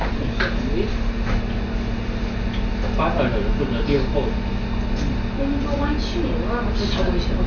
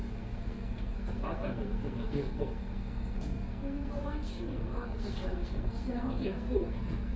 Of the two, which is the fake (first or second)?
second